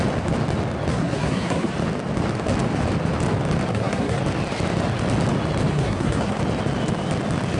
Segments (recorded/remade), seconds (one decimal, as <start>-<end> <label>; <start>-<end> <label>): 0.0-0.9 recorded; 0.9-1.7 remade; 1.7-3.7 recorded; 3.7-4.2 remade; 4.2-5.7 recorded; 5.7-6.4 remade; 6.4-7.6 recorded

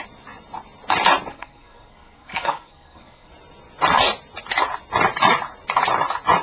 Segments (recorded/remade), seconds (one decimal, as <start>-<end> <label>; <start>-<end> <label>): 0.0-1.3 recorded; 1.3-3.3 remade; 3.3-6.4 recorded

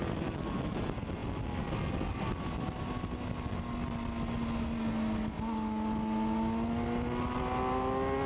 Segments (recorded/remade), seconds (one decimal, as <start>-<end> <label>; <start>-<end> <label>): 0.0-8.3 recorded

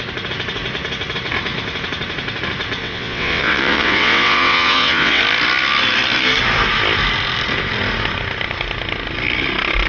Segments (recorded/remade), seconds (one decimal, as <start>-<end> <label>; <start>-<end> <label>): 0.0-2.8 recorded; 2.8-5.2 remade; 5.2-9.9 recorded

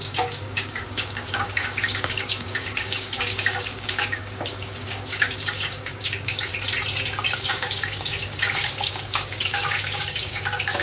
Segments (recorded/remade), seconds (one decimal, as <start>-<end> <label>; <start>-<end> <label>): 0.0-6.5 remade; 6.5-7.3 recorded; 7.3-10.8 remade

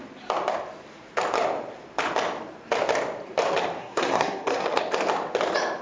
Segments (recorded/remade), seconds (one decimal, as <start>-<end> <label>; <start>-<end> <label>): 0.0-3.8 recorded; 3.8-4.8 remade; 4.8-5.8 recorded

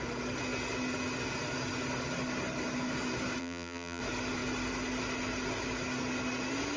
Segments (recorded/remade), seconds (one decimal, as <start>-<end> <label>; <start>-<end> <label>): 0.0-3.4 recorded; 3.4-4.0 remade; 4.0-6.8 recorded

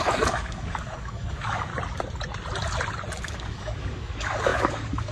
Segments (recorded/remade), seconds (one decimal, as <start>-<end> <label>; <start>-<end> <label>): 0.0-1.7 remade; 1.7-3.2 recorded; 3.2-5.1 remade